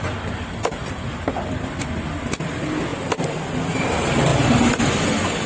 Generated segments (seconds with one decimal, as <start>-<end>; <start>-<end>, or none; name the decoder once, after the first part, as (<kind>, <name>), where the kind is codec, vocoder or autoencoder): 0.0-2.9 (vocoder, BigVGAN v2); 3.5-4.3; 4.8-5.5